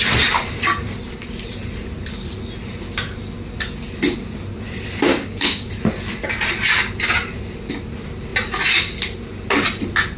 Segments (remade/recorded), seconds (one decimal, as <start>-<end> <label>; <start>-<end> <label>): 0.0-5.1 recorded; 5.1-5.7 remade; 5.7-10.2 recorded